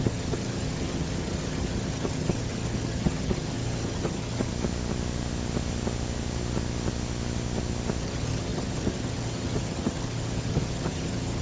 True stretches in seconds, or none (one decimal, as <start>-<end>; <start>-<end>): 4.5-8.0